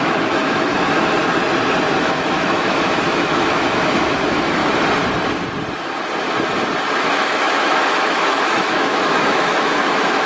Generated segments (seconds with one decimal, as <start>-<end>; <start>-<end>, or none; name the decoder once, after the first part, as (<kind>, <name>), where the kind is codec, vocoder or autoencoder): 0.0-0.7 (autoencoder, DAC-VAE); 2.0-4.6; 6.9-10.3